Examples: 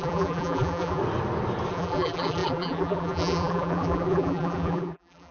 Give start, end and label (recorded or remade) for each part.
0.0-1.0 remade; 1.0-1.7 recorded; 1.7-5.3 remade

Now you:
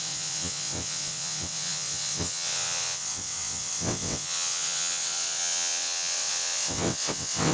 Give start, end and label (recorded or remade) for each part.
0.0-7.5 remade

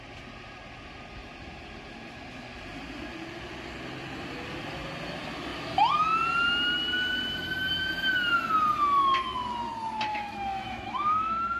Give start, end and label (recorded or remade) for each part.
0.0-10.1 recorded; 10.1-11.6 remade

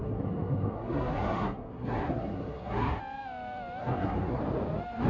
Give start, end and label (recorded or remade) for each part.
0.0-3.0 remade; 3.0-3.8 recorded; 3.8-4.4 remade; 4.4-5.1 recorded

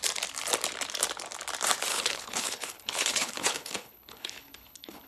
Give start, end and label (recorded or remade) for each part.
0.0-1.9 recorded; 1.9-5.1 remade